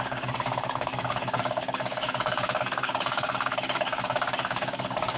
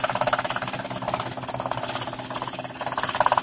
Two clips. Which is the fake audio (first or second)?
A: first